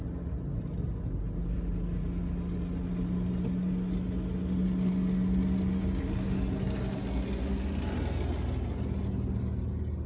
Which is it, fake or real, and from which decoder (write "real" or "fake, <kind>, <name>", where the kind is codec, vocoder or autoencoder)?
real